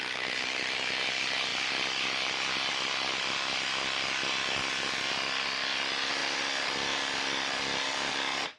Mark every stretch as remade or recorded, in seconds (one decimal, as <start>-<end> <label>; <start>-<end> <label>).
0.0-8.6 recorded